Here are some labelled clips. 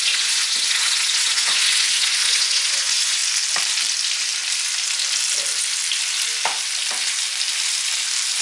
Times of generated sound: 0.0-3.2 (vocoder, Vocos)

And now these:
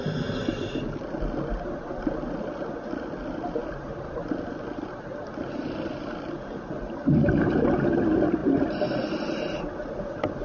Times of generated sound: none

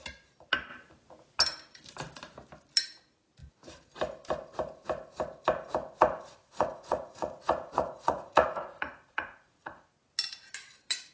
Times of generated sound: 6.4-9.9 (vocoder, Vocos)